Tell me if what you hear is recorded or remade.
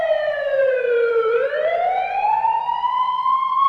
remade